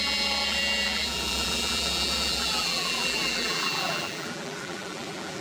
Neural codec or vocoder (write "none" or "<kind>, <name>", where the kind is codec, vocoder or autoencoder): vocoder, BigVGAN v2